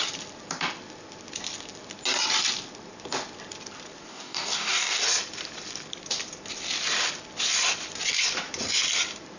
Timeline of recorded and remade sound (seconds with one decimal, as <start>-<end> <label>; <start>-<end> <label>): 0.0-4.1 recorded; 4.1-5.0 remade; 5.0-9.4 recorded